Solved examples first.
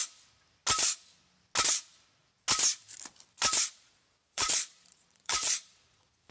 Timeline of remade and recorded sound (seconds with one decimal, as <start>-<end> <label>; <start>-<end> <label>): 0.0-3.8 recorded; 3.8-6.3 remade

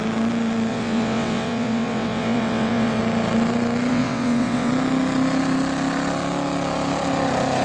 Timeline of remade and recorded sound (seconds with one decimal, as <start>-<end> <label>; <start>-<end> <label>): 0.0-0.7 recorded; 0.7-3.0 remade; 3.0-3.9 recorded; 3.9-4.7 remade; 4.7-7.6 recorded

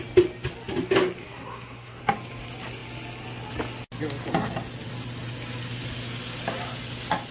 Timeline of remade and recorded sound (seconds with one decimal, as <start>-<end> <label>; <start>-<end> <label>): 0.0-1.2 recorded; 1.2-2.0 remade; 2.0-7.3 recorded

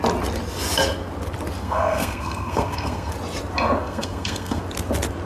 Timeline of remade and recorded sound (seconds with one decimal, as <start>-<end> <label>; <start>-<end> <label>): 0.0-1.6 recorded; 1.6-3.1 remade; 3.1-3.8 recorded; 3.8-4.6 remade; 4.6-5.3 recorded

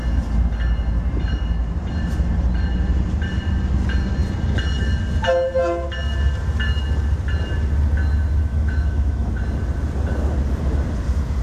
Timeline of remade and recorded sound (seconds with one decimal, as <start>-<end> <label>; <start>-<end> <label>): 0.0-8.5 recorded; 8.5-9.3 remade; 9.3-11.4 recorded